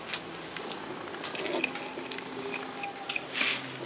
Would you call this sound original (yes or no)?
yes